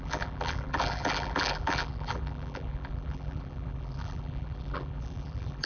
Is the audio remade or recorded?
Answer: remade